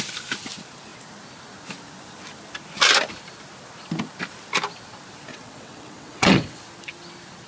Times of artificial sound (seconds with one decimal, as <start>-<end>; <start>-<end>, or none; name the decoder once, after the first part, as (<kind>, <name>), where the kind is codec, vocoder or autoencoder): 5.3-6.6 (vocoder, WaveNeXt)